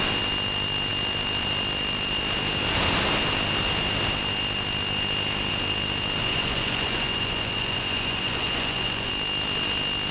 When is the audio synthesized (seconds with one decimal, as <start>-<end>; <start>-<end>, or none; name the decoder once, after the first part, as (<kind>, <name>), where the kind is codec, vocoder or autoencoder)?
6.2-9.1 (vocoder, Vocos)